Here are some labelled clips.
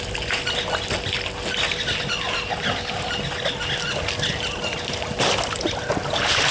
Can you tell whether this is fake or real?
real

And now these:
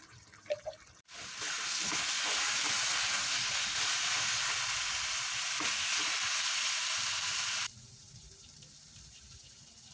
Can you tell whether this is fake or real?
real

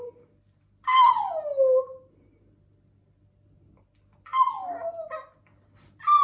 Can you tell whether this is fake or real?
real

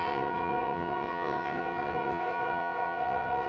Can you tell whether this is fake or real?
fake